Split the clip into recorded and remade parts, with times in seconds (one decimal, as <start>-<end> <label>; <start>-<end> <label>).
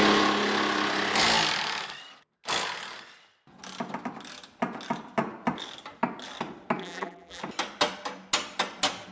0.0-6.8 recorded; 6.8-7.4 remade; 7.4-9.1 recorded